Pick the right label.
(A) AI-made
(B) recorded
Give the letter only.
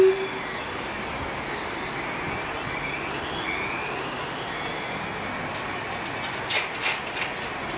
B